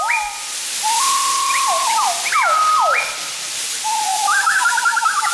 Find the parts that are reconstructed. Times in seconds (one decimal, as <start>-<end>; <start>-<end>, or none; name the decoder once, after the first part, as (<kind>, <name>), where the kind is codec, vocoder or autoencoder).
4.1-5.3 (autoencoder, DAC-VAE)